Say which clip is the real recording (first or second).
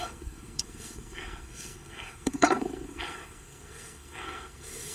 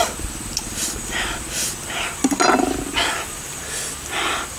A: second